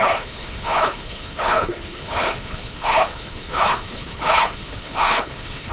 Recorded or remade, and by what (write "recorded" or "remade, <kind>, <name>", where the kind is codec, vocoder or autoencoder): remade, codec, HILCodec